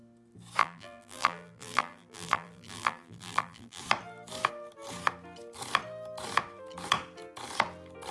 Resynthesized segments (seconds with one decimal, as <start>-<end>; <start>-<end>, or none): 0.6-3.8